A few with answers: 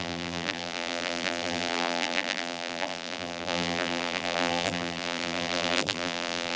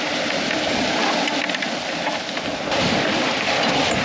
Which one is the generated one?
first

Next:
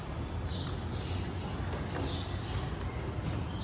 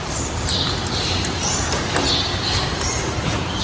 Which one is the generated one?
second